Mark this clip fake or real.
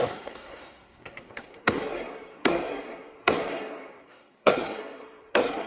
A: fake